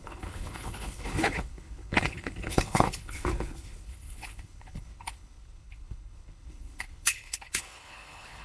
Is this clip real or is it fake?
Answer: fake